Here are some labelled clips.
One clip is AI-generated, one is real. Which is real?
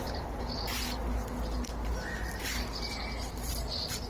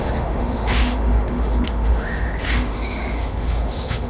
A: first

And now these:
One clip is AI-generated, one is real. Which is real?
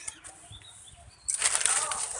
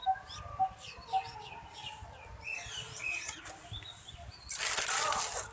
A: second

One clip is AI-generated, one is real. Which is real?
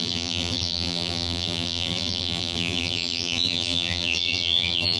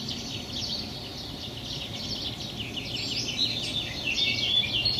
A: second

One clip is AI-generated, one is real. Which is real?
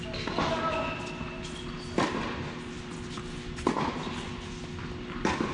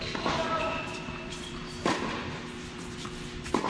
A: first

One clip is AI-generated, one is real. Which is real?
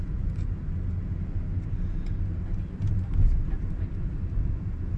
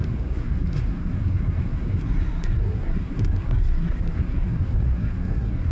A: first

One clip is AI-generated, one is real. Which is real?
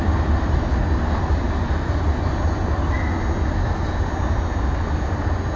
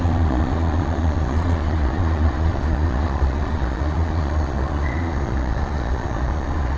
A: first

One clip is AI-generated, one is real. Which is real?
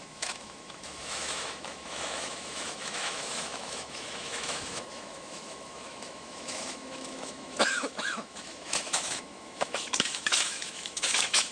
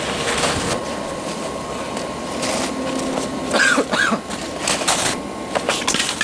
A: second